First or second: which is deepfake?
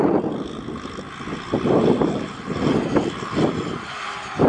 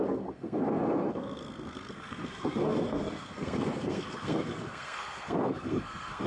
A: second